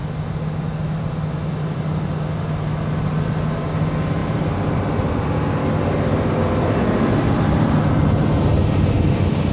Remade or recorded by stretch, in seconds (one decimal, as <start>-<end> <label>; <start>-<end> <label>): 0.0-9.5 recorded